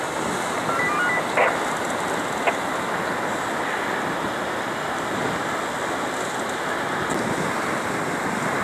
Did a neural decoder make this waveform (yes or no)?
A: no